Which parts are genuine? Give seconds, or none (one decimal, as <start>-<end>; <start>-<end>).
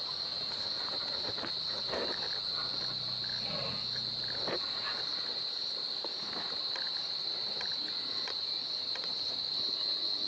0.0-5.1; 7.8-10.3